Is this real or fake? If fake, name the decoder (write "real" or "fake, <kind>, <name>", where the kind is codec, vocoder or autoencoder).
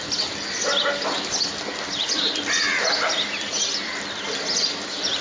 real